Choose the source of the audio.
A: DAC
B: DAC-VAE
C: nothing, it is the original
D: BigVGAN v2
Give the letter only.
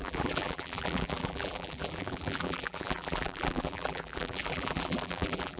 D